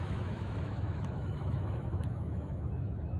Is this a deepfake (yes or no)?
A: yes